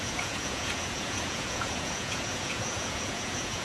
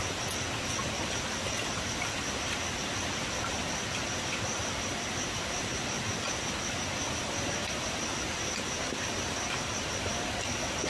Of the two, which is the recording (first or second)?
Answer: second